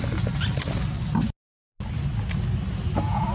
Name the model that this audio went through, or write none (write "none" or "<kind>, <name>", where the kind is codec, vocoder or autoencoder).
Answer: none